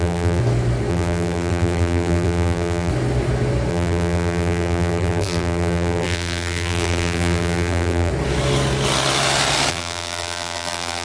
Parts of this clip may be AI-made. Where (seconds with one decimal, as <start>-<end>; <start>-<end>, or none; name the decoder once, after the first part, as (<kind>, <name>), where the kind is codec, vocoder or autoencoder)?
0.0-0.4 (vocoder, BigVGAN v2); 0.9-2.9; 3.7-8.1; 9.7-11.0